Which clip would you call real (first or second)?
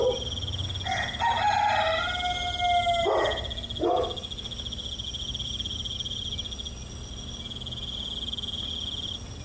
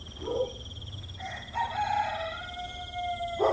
first